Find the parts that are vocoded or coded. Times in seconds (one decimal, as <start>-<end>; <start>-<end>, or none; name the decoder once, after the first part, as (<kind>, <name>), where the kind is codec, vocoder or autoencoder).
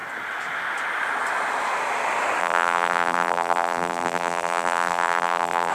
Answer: 2.4-5.7 (vocoder, BigVGAN v2)